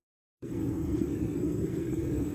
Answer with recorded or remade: remade